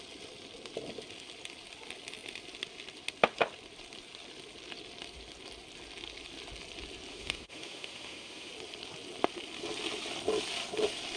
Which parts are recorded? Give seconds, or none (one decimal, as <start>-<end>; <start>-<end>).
0.0-7.1; 8.5-11.2